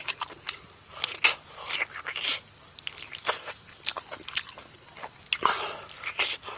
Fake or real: real